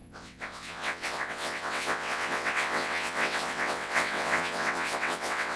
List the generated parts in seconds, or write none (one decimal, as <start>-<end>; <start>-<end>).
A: 0.0-5.6